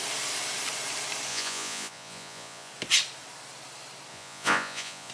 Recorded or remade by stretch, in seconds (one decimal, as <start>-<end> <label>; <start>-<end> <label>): 0.0-1.3 recorded; 1.3-2.7 remade; 2.7-4.1 recorded; 4.1-5.1 remade